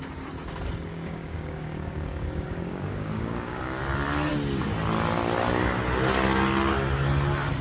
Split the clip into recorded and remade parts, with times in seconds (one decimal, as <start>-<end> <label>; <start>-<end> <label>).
0.0-0.9 recorded; 0.9-3.8 remade; 3.8-7.6 recorded